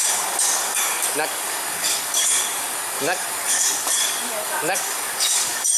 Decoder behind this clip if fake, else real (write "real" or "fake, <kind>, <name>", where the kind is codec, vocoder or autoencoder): fake, codec, DAC